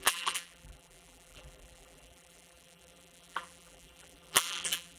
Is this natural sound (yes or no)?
no